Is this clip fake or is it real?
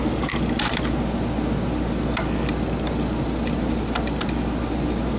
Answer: real